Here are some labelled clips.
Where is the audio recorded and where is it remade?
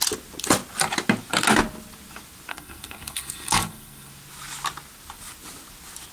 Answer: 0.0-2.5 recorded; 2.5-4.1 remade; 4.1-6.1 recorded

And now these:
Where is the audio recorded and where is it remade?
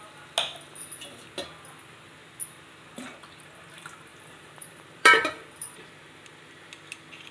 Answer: 0.0-4.1 recorded; 4.1-5.9 remade; 5.9-7.3 recorded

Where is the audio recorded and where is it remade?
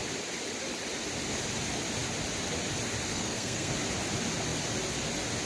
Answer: 0.0-3.1 recorded; 3.1-3.7 remade; 3.7-5.5 recorded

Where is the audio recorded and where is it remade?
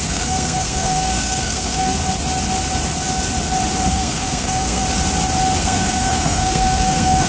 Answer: 0.0-2.0 remade; 2.0-3.9 recorded; 3.9-4.8 remade; 4.8-5.6 recorded; 5.6-7.3 remade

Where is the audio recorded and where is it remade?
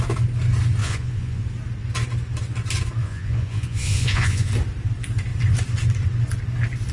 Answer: 0.0-0.8 recorded; 0.8-1.4 remade; 1.4-3.0 recorded; 3.0-4.5 remade; 4.5-6.9 recorded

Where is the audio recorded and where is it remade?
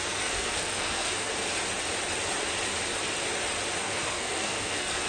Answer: 0.0-1.3 remade; 1.3-3.8 recorded; 3.8-5.1 remade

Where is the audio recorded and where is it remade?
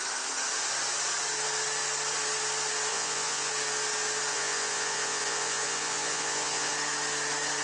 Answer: 0.0-2.9 recorded; 2.9-3.5 remade; 3.5-4.3 recorded; 4.3-6.7 remade; 6.7-7.6 recorded